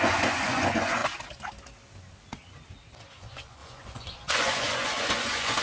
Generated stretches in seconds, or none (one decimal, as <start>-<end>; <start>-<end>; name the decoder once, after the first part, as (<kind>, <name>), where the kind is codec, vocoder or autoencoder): 0.0-1.0 (vocoder, Vocos); 3.2-5.6